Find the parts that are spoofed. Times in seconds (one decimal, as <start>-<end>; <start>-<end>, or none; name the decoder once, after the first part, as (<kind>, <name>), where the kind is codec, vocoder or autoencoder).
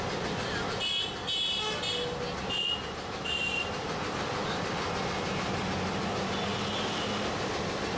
none